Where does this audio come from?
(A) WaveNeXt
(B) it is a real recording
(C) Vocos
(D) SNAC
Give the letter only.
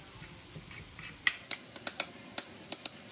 B